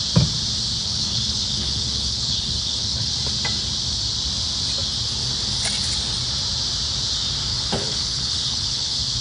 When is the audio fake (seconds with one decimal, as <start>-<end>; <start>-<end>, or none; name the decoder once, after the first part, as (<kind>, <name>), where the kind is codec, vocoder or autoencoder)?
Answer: 0.8-3.1 (codec, HILCodec); 7.5-9.2